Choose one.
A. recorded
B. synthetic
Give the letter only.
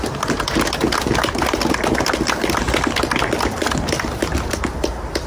A